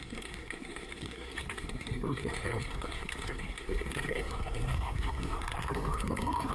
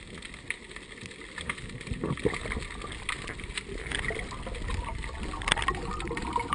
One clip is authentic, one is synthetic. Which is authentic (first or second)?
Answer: second